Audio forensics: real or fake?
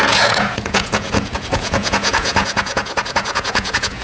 fake